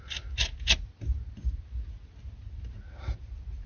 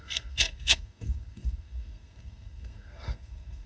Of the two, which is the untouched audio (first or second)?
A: first